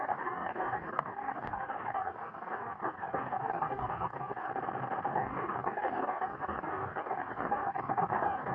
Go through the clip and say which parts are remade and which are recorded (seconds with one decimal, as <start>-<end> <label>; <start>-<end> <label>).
0.0-4.5 remade; 4.5-5.1 recorded; 5.1-8.5 remade